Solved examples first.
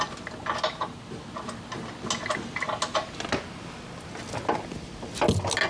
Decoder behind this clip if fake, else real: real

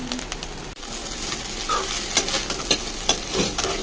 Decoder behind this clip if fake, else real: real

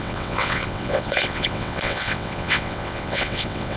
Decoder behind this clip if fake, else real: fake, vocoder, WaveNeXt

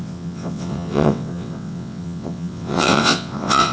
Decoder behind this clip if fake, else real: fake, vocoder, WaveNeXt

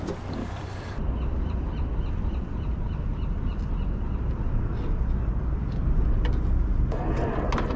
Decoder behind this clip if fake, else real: real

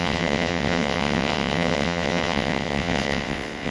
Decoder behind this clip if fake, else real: fake, vocoder, WaveNeXt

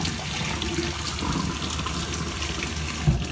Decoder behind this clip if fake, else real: real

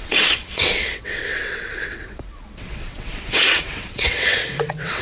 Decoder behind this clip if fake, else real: fake, vocoder, WaveNeXt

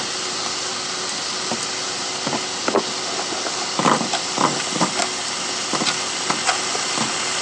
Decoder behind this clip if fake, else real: real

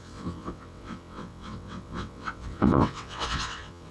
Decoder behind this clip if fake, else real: fake, vocoder, WaveNeXt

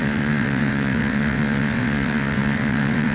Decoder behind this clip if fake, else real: fake, vocoder, WaveNeXt